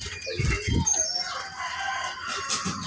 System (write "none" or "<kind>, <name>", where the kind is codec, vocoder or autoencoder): none